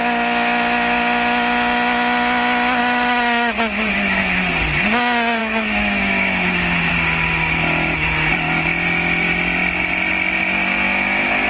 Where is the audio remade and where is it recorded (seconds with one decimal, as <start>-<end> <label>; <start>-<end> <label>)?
0.0-2.8 recorded; 2.8-4.2 remade; 4.2-5.4 recorded; 5.4-6.9 remade; 6.9-11.5 recorded